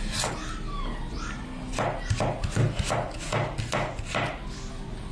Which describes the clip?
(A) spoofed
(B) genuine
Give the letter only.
B